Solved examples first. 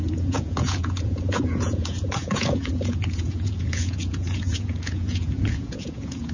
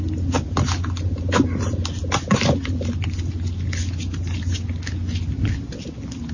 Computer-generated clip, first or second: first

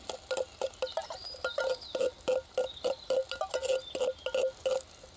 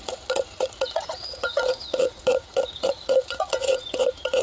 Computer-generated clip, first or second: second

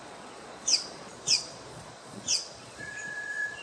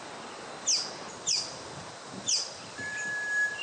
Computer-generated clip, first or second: first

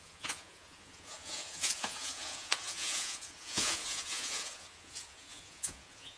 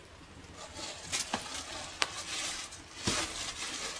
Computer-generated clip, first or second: first